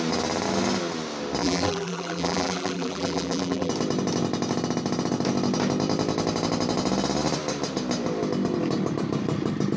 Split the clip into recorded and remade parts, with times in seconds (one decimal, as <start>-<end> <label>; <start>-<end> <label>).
0.0-1.4 recorded; 1.4-3.7 remade; 3.7-9.8 recorded